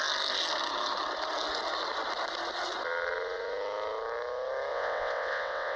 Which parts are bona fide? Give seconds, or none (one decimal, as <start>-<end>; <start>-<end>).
0.0-4.7